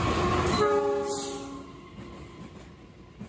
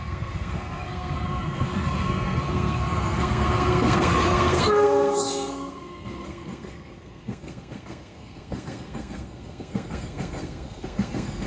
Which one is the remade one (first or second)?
second